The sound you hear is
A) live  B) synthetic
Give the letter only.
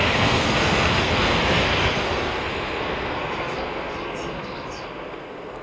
B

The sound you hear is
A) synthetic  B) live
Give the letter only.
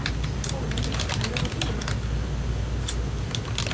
B